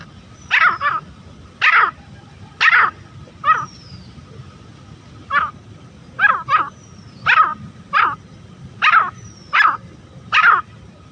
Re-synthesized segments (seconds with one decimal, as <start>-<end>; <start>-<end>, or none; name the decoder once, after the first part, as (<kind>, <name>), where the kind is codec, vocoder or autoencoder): none